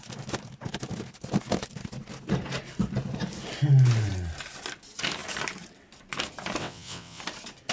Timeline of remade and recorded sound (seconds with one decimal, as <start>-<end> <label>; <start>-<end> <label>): 0.0-6.6 recorded; 6.6-7.2 remade; 7.2-7.7 recorded